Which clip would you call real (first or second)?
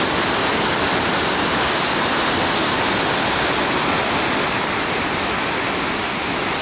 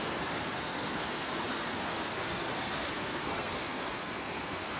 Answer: first